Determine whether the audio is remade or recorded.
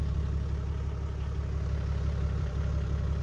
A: remade